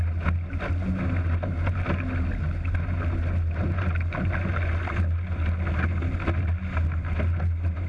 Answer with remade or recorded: recorded